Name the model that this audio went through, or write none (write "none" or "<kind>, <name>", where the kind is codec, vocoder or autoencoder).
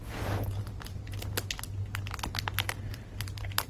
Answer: none